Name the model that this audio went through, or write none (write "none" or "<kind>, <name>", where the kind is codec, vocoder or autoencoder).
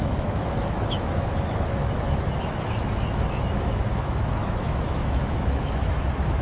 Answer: autoencoder, DAC-VAE